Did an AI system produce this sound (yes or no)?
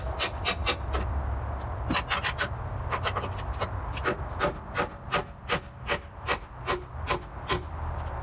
no